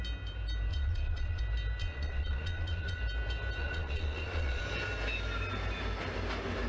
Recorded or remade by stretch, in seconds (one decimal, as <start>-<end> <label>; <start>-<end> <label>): 0.0-0.7 recorded; 0.7-1.4 remade; 1.4-1.8 recorded; 1.8-3.0 remade; 3.0-3.6 recorded; 3.6-4.6 remade; 4.6-6.7 recorded